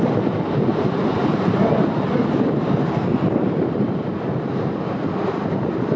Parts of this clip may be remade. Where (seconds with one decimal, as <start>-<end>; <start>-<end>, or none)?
none